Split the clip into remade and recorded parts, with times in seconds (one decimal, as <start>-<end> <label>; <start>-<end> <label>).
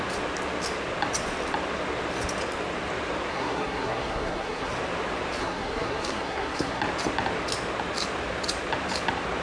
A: 0.0-3.3 recorded; 3.3-4.7 remade; 4.7-5.4 recorded; 5.4-6.8 remade; 6.8-9.4 recorded